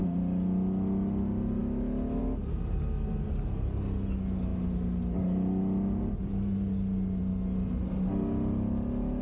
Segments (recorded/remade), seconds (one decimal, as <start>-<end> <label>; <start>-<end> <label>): 0.0-1.6 recorded; 1.6-2.2 remade; 2.2-9.2 recorded